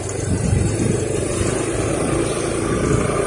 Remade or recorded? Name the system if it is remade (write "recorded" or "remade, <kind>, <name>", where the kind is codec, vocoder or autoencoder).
remade, vocoder, BigVGAN v2